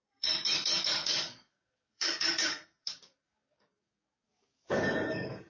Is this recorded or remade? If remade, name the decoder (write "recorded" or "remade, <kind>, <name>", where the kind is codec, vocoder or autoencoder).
remade, codec, DAC